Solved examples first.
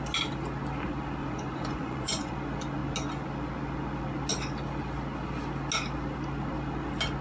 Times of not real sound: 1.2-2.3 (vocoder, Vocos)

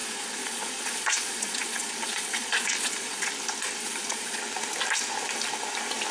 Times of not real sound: 0.0-3.3 (vocoder, Vocos); 3.8-4.4